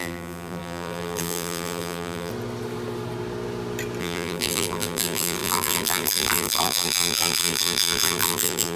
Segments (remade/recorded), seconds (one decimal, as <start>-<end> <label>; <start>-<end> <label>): 0.0-2.3 remade; 2.3-4.0 recorded; 4.0-8.8 remade